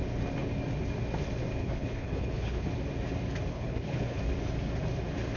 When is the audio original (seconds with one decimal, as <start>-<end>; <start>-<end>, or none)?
0.0-1.6; 2.7-3.5; 4.2-5.4